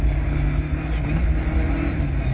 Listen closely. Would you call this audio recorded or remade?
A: recorded